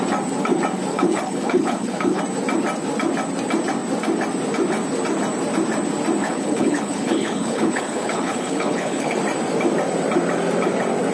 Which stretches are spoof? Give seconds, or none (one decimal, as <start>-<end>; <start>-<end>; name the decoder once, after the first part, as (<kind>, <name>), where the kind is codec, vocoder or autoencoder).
0.9-2.2 (codec, HILCodec); 6.2-9.2